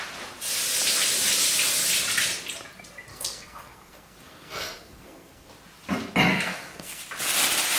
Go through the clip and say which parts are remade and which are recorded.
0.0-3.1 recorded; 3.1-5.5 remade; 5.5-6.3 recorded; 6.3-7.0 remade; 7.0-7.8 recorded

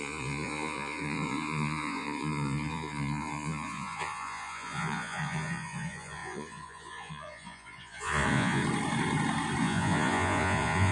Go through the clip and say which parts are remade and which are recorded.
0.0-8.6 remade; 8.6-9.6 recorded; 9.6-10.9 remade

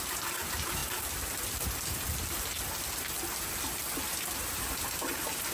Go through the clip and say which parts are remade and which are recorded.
0.0-0.8 remade; 0.8-4.1 recorded; 4.1-5.5 remade

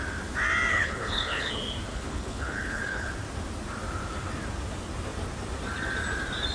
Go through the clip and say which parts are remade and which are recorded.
0.0-0.7 recorded; 0.7-1.5 remade; 1.5-1.9 recorded; 1.9-3.1 remade; 3.1-6.5 recorded

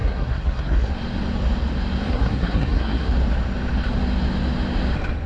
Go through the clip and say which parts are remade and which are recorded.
0.0-0.9 remade; 0.9-2.0 recorded; 2.0-3.1 remade; 3.1-5.3 recorded

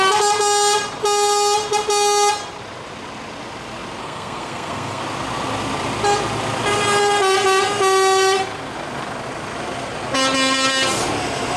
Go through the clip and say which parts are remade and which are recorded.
0.0-4.0 recorded; 4.0-5.0 remade; 5.0-11.6 recorded

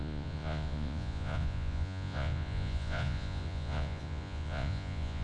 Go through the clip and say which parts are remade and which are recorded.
0.0-5.2 remade

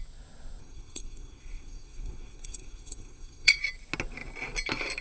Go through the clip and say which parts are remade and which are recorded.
0.0-0.6 recorded; 0.6-3.6 remade; 3.6-5.0 recorded